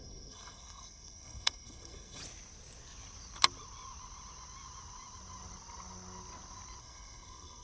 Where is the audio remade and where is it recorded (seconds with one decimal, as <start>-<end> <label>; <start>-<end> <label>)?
0.0-2.2 remade; 2.2-6.8 recorded; 6.8-7.6 remade

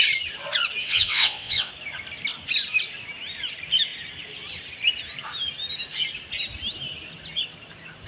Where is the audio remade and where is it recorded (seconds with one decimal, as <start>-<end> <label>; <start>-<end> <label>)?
0.0-0.8 recorded; 0.8-1.7 remade; 1.7-8.1 recorded

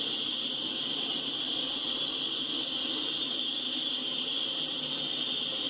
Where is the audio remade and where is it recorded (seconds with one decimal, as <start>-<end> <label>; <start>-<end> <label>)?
0.0-5.7 recorded

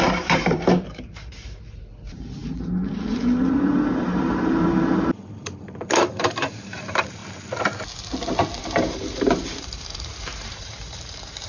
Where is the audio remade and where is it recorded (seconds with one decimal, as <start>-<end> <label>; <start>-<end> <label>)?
0.0-7.2 remade; 7.2-8.6 recorded; 8.6-11.5 remade